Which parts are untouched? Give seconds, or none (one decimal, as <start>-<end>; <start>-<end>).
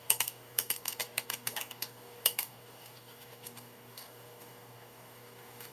none